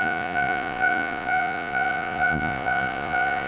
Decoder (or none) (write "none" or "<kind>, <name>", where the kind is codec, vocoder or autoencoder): vocoder, Vocos